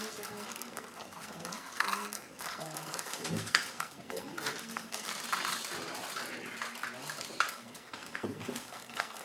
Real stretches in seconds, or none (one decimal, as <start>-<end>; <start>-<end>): 5.1-7.5